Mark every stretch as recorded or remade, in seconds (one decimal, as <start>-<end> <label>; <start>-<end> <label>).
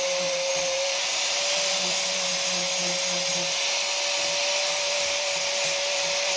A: 0.0-2.3 remade; 2.3-4.6 recorded; 4.6-6.4 remade